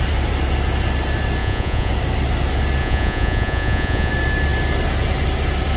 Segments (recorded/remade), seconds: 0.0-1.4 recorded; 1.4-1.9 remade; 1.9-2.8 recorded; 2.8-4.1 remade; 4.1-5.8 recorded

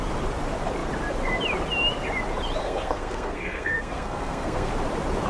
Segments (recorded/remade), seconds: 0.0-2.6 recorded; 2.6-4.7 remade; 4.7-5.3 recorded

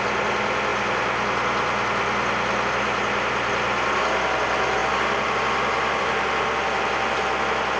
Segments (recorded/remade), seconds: 0.0-7.8 recorded